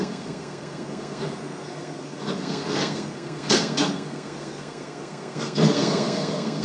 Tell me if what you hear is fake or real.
fake